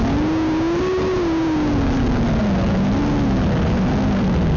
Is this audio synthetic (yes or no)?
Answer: no